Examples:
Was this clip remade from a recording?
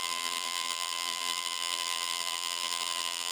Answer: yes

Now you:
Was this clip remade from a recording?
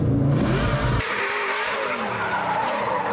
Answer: yes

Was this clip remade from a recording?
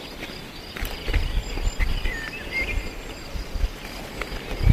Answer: no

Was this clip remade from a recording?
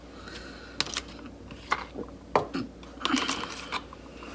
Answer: no